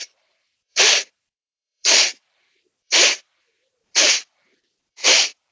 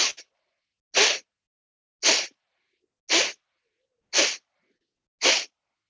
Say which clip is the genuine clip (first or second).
second